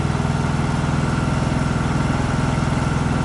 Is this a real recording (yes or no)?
yes